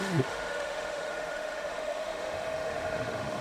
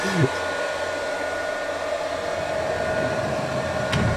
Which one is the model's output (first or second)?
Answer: first